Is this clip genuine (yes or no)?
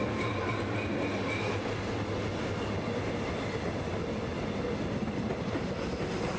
yes